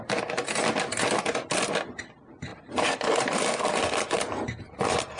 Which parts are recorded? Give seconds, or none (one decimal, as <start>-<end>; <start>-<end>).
0.0-2.5; 3.6-5.2